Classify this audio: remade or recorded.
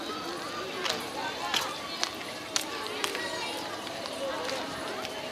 recorded